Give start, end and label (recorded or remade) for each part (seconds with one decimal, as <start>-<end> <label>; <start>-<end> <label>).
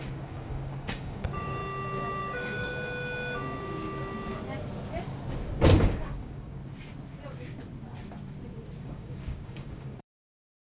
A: 0.0-1.6 remade; 1.6-2.2 recorded; 2.2-2.7 remade; 2.7-5.5 recorded; 5.5-6.6 remade; 6.6-8.8 recorded; 8.8-10.8 remade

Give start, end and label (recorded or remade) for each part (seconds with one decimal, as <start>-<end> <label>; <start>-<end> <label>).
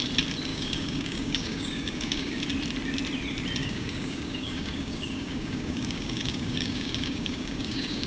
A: 0.0-0.5 recorded; 0.5-2.4 remade; 2.4-3.6 recorded; 3.6-8.1 remade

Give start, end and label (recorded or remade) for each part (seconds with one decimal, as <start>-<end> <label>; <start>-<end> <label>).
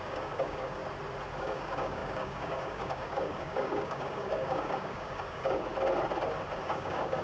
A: 0.0-0.8 remade; 0.8-1.4 recorded; 1.4-5.7 remade; 5.7-6.6 recorded; 6.6-7.2 remade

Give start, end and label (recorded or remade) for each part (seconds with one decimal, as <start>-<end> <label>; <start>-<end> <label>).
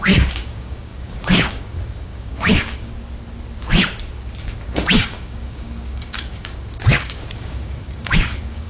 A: 0.0-2.9 remade; 2.9-4.4 recorded; 4.4-8.7 remade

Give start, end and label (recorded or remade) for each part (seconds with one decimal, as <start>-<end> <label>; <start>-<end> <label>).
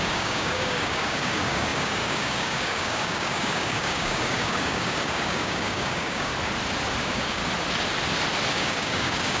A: 0.0-6.3 remade; 6.3-7.0 recorded; 7.0-7.4 remade; 7.4-8.5 recorded; 8.5-9.4 remade